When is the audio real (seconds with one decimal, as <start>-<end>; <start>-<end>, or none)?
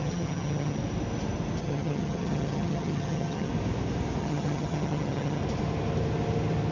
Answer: 0.8-1.6; 3.5-4.2; 5.4-6.7